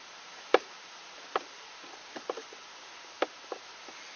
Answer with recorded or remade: recorded